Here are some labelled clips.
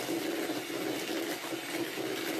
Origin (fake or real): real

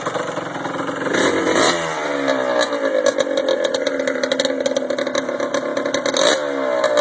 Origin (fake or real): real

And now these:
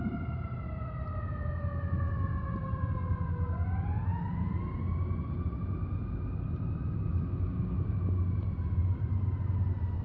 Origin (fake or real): real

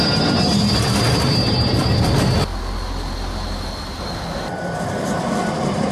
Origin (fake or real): real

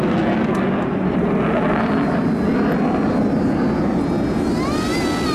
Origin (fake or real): real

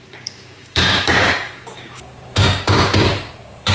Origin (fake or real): fake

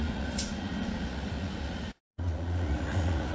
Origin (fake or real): fake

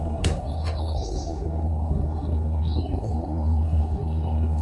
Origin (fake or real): fake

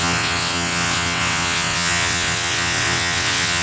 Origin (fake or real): fake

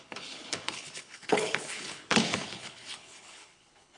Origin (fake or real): fake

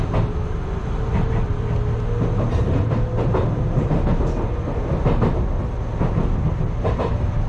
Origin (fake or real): real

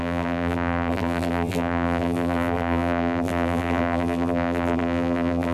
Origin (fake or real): fake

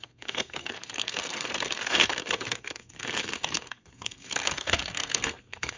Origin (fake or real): fake